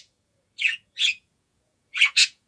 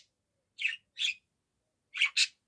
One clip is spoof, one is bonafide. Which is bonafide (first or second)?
second